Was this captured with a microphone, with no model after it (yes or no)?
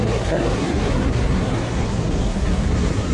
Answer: no